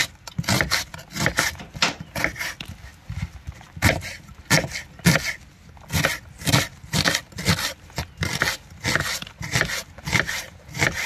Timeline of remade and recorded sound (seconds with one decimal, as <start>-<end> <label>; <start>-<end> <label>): 0.0-7.2 recorded; 7.2-7.8 remade; 7.8-11.1 recorded